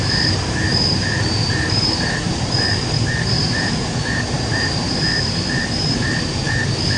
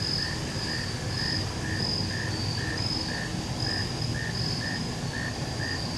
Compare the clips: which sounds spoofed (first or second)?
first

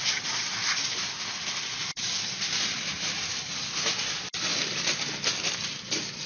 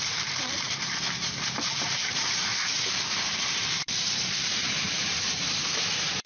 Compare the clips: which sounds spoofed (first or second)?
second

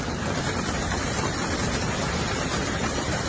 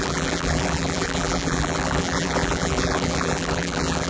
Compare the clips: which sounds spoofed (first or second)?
second